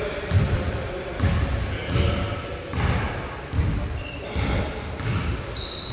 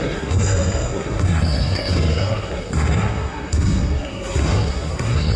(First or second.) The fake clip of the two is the second